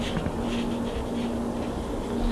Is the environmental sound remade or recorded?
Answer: recorded